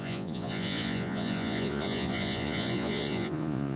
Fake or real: fake